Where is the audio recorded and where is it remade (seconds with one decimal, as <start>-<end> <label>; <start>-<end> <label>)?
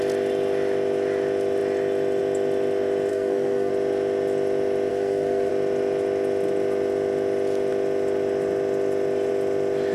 0.0-3.1 recorded; 3.1-3.7 remade; 3.7-4.9 recorded; 4.9-5.5 remade; 5.5-9.9 recorded